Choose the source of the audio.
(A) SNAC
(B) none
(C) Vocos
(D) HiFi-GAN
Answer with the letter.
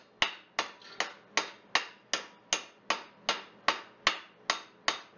B